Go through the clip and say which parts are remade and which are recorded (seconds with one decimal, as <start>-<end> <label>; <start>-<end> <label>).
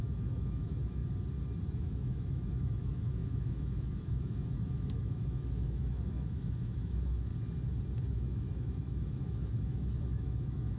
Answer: 0.0-1.0 remade; 1.0-1.6 recorded; 1.6-7.3 remade; 7.3-8.1 recorded; 8.1-10.8 remade